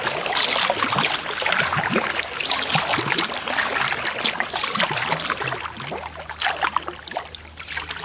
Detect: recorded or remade recorded